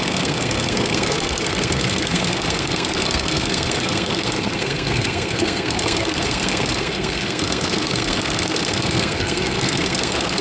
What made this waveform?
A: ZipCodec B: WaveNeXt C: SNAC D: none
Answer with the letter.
C